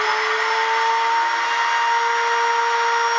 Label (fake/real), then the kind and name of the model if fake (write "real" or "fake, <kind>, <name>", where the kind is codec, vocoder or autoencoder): real